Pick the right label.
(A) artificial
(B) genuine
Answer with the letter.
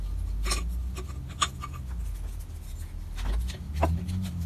B